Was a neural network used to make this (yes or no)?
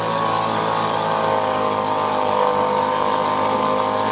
yes